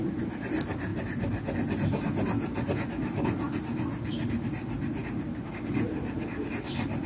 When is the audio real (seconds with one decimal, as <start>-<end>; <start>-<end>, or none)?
0.0-7.1